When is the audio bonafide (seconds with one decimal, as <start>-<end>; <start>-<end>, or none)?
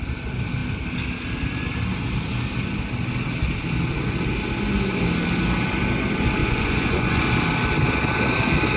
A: 0.0-6.4; 7.2-8.8